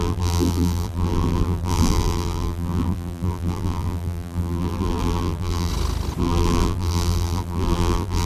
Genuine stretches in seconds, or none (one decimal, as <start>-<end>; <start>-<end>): 5.7-6.2